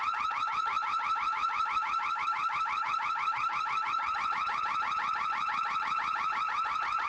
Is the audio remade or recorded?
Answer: remade